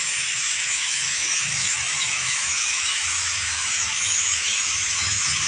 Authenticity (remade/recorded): remade